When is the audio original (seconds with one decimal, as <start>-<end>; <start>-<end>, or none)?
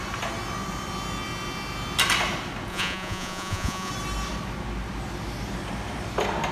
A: 0.0-2.7; 3.9-6.5